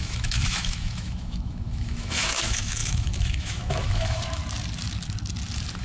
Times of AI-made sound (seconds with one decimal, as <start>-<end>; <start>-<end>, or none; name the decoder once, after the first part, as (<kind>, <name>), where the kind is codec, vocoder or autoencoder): 0.0-4.4 (autoencoder, DAC-VAE)